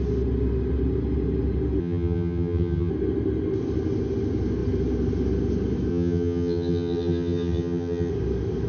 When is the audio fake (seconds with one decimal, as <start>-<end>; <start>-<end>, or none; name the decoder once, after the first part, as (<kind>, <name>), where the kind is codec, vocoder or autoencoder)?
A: 1.8-2.9 (vocoder, HiFi-GAN); 5.9-8.1